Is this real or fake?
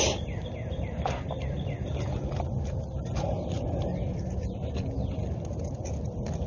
real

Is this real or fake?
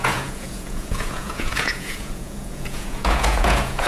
fake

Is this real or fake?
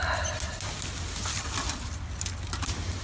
real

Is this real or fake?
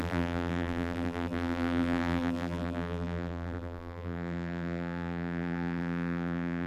fake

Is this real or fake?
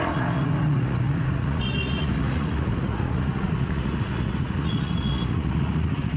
fake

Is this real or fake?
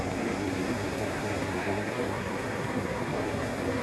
fake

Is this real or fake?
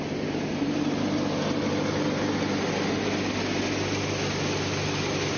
real